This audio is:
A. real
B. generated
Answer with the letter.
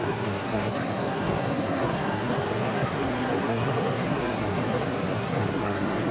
B